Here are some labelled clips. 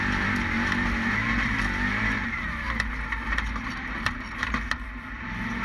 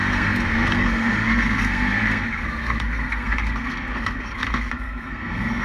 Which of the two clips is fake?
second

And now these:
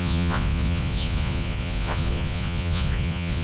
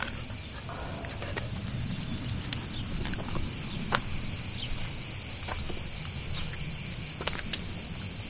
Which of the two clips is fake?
first